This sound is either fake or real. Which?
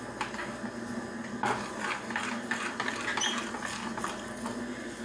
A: real